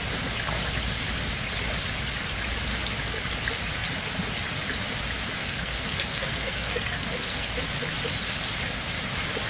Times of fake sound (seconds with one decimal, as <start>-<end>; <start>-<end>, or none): 5.4-7.5